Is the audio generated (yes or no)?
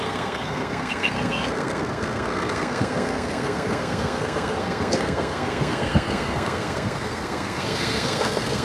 yes